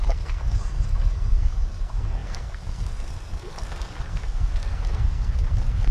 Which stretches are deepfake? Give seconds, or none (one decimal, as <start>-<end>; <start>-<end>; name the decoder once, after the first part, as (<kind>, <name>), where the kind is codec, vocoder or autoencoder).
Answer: 0.0-5.9 (codec, SNAC)

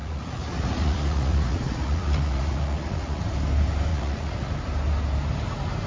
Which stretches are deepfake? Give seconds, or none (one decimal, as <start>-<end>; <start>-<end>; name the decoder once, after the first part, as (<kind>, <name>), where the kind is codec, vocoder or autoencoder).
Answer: 0.0-3.2 (vocoder, Vocos); 3.9-4.5

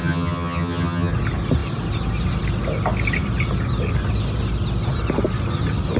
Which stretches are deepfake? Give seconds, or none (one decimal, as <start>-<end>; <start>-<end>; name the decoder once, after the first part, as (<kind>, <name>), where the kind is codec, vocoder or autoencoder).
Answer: 0.0-1.1 (vocoder, HiFi-GAN)

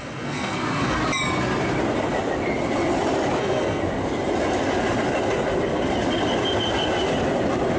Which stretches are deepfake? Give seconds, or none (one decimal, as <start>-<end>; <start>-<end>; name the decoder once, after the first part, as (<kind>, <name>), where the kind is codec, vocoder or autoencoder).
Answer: 0.0-1.0 (codec, SNAC); 3.4-3.8

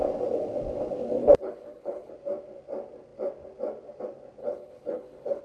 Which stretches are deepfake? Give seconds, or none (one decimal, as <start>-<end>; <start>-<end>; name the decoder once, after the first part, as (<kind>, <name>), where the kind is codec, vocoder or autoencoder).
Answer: 1.2-2.1 (codec, HILCodec); 4.4-5.4

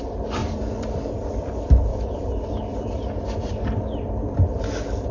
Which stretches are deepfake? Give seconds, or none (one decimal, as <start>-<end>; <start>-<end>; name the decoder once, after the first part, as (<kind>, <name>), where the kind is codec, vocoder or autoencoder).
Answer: 0.4-1.5 (vocoder, BigVGAN v2); 1.9-5.1

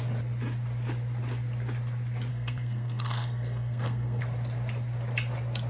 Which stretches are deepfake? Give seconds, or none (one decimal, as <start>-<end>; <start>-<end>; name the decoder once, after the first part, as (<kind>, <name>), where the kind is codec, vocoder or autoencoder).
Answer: 2.3-4.2 (codec, SNAC)